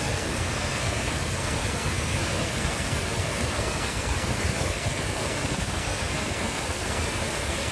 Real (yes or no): no